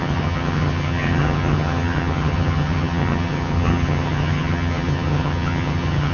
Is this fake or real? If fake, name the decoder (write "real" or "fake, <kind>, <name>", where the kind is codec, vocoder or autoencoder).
fake, vocoder, HiFi-GAN